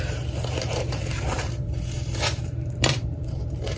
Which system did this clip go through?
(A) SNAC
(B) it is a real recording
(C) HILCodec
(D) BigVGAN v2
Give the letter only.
D